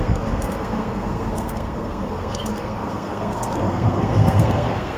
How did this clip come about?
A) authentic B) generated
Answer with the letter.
B